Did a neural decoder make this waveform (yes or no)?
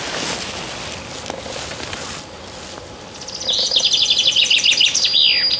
no